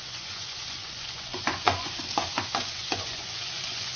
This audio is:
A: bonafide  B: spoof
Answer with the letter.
B